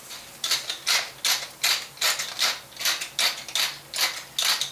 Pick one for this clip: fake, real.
real